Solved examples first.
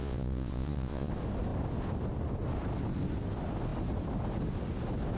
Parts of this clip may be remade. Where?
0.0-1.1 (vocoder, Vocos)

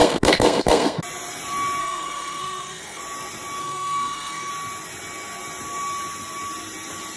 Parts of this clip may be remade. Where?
0.0-1.0 (codec, SNAC); 1.8-3.0; 3.6-4.5

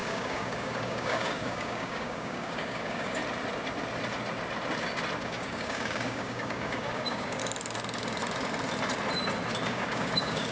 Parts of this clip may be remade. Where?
0.0-3.2 (codec, DAC); 5.2-7.4; 9.7-10.5